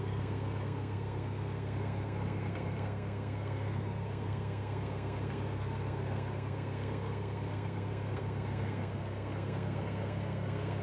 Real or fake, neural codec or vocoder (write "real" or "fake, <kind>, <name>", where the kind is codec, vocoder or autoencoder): fake, codec, SNAC